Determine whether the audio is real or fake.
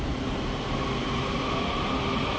real